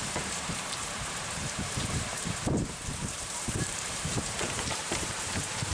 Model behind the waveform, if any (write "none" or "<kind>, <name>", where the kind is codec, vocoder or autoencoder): vocoder, BigVGAN v2